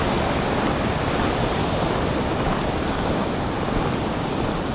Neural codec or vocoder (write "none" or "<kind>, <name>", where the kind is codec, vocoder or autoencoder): none